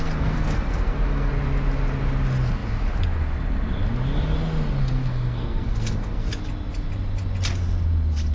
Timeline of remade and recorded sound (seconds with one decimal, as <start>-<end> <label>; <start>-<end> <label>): 0.0-1.3 remade; 1.3-4.8 recorded; 4.8-6.3 remade; 6.3-8.3 recorded